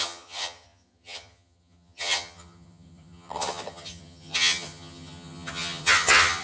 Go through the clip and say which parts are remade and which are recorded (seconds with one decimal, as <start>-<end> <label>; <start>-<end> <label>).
0.0-6.4 remade